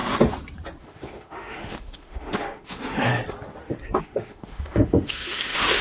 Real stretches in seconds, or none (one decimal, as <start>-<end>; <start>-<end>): 0.0-0.8; 3.1-4.0